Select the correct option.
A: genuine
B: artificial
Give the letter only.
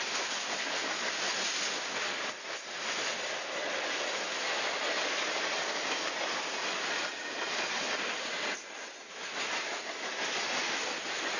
A